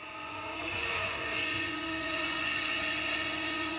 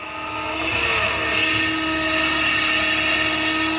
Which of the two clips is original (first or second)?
second